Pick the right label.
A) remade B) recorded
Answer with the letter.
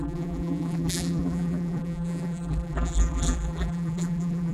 A